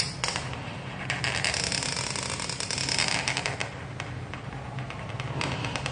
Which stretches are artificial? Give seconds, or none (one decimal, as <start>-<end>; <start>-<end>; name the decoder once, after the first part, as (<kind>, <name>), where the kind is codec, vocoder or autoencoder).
none